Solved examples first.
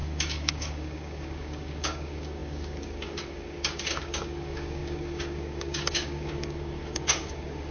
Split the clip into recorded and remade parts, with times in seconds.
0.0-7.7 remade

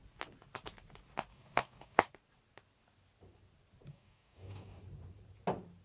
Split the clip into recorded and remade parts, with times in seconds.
0.0-1.3 recorded; 1.3-2.1 remade; 2.1-3.9 recorded; 3.9-4.8 remade; 4.8-5.8 recorded

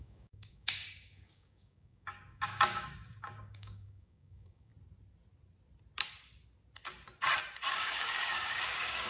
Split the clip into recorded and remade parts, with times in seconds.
0.0-4.7 remade; 4.7-7.7 recorded; 7.7-9.1 remade

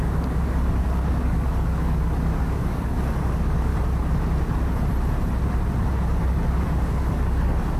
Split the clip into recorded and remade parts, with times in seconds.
0.0-3.7 remade; 3.7-6.6 recorded; 6.6-7.8 remade

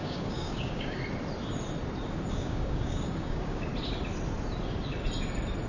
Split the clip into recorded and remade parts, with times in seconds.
0.0-1.0 remade; 1.0-2.3 recorded; 2.3-3.7 remade; 3.7-5.7 recorded

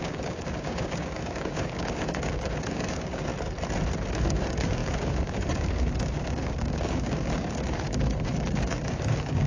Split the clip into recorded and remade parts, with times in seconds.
0.0-3.3 remade; 3.3-4.1 recorded; 4.1-9.5 remade

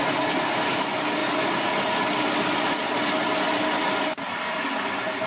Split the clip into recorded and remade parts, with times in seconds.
0.0-5.3 recorded